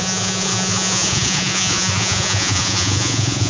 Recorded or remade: remade